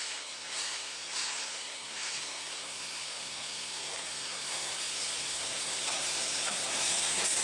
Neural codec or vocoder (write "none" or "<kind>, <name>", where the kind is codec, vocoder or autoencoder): codec, SNAC